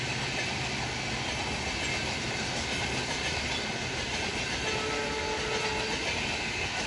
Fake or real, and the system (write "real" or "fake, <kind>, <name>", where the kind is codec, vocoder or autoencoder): real